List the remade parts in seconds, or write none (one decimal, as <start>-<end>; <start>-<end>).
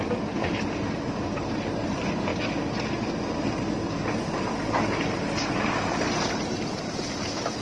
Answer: 0.0-2.3; 3.3-7.6